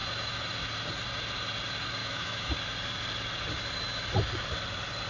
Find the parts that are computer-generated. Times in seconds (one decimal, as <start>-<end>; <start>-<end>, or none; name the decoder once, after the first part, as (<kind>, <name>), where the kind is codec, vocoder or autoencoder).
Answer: 2.0-2.5 (autoencoder, DAC-VAE)